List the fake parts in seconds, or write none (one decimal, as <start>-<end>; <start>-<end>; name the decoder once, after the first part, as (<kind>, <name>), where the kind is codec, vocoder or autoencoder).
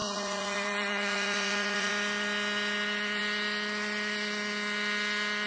0.0-1.9 (vocoder, Vocos)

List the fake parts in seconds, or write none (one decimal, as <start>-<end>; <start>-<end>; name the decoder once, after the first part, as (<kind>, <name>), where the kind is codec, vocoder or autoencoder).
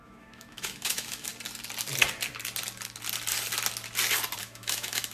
0.0-1.3 (autoencoder, DAC-VAE); 4.4-5.1